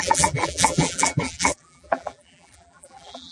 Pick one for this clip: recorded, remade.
remade